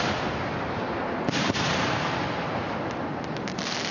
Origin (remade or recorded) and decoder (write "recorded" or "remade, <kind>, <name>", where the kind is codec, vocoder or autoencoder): remade, vocoder, BigVGAN v2